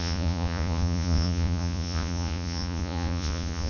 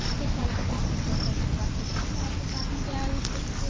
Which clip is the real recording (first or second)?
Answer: second